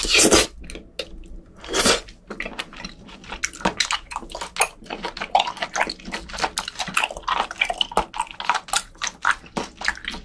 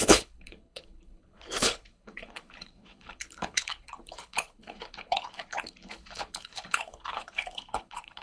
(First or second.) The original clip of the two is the first